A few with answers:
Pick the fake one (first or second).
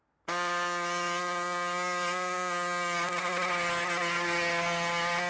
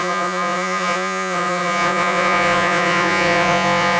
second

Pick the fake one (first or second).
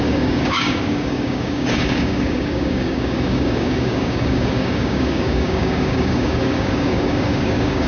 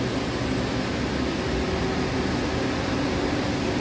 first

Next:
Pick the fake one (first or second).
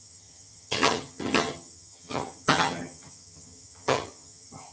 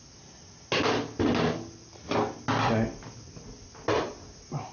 first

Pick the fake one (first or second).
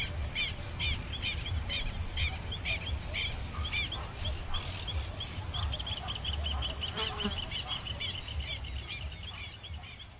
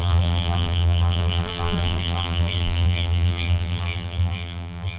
second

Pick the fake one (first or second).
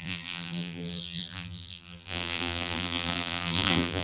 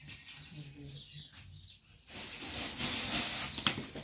first